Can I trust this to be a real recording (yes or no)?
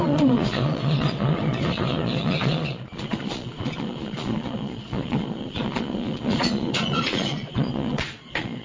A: no